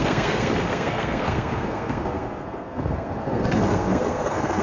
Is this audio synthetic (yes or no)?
yes